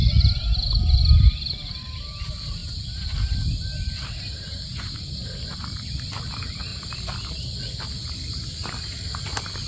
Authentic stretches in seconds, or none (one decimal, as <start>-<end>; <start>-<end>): 0.0-6.7; 7.3-9.7